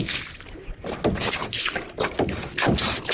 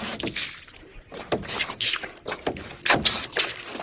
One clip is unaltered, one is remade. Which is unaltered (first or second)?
second